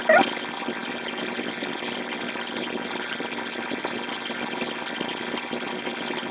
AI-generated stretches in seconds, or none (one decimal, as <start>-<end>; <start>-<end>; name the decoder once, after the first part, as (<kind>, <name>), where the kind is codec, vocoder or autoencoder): none